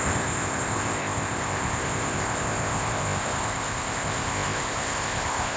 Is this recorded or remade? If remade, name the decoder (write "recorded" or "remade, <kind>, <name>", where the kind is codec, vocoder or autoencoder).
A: remade, codec, ZipCodec